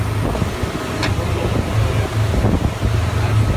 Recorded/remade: recorded